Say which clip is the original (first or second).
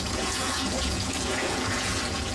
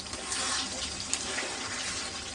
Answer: second